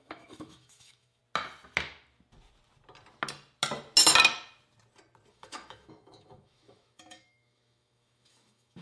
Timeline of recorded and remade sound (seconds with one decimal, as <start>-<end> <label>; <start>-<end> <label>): 0.0-1.2 remade; 1.2-5.3 recorded; 5.3-8.8 remade